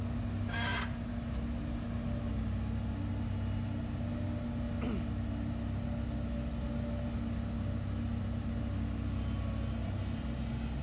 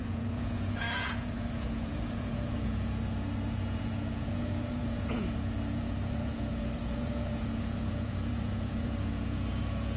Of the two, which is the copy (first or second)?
second